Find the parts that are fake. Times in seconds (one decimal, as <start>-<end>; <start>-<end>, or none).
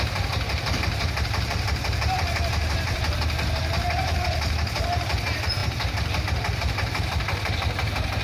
0.0-8.2